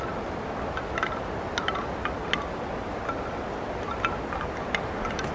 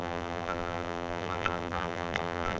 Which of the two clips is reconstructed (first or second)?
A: second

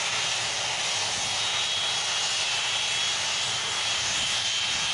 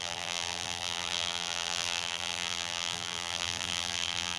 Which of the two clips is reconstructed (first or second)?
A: second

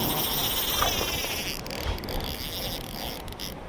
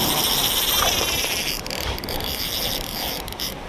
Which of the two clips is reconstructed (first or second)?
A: second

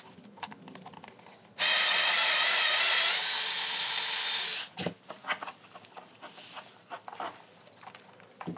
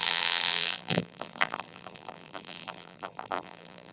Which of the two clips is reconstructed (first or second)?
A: second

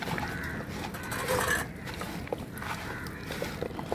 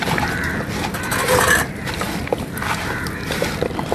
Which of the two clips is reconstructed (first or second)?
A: second